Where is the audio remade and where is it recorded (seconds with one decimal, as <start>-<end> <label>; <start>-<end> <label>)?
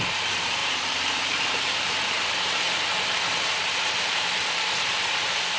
0.0-5.6 remade